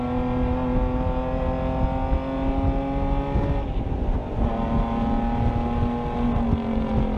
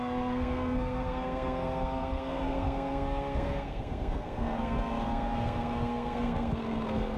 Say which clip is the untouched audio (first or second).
first